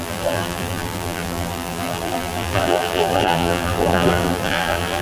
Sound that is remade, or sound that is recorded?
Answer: remade